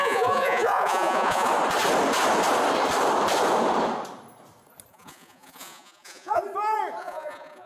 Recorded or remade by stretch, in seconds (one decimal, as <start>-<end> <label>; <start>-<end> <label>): 0.0-1.5 remade; 1.5-4.9 recorded; 4.9-6.4 remade; 6.4-7.0 recorded; 7.0-7.7 remade